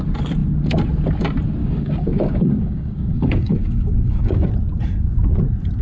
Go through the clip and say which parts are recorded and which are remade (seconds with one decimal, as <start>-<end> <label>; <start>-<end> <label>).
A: 0.0-1.6 recorded; 1.6-4.5 remade; 4.5-5.8 recorded